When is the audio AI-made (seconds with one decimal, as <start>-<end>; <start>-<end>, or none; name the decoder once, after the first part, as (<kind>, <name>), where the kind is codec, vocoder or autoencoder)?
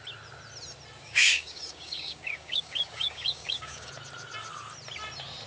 1.0-3.9 (codec, DAC)